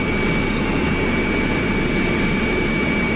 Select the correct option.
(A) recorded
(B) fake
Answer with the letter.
B